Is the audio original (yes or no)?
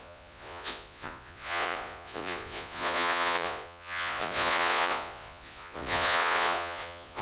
no